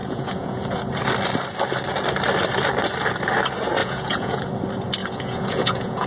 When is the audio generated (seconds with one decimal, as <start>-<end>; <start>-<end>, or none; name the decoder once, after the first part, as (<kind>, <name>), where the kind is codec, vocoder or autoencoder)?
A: 0.0-0.6 (vocoder, Vocos); 3.8-4.5; 5.0-6.1